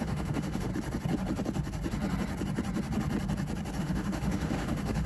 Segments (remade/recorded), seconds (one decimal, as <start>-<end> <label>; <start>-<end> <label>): 0.0-0.7 remade; 0.7-3.8 recorded; 3.8-5.1 remade